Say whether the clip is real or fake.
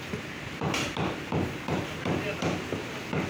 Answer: fake